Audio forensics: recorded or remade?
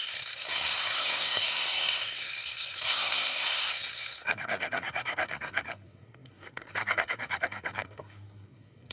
remade